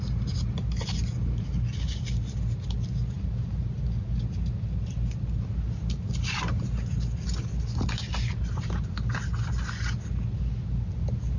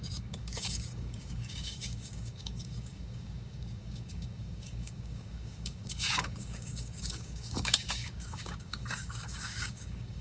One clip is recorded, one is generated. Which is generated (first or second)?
second